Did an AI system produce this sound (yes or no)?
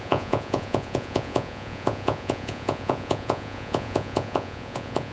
yes